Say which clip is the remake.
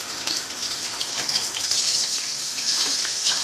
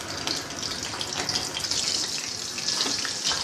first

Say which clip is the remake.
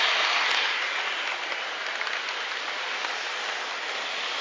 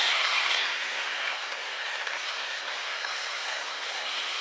second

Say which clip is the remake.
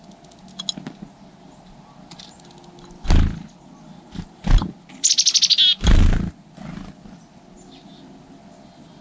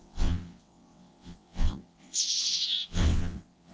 second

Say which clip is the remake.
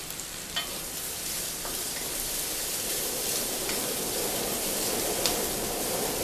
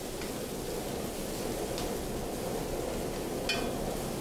first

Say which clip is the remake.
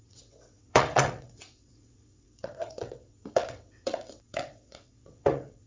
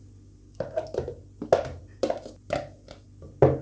first